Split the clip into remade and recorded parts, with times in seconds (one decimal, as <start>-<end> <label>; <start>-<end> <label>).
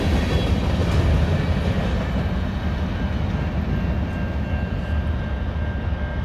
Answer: 0.0-6.2 recorded